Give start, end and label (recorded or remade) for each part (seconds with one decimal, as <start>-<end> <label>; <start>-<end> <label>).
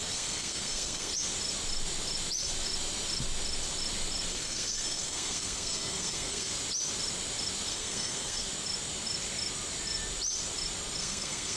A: 0.0-1.1 remade; 1.1-4.3 recorded; 4.3-6.5 remade; 6.5-7.7 recorded; 7.7-8.4 remade; 8.4-11.0 recorded; 11.0-11.6 remade